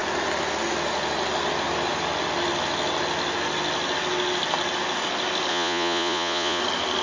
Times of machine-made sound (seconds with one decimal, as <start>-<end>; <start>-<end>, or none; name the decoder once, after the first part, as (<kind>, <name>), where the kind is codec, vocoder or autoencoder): 5.5-6.6 (vocoder, Vocos)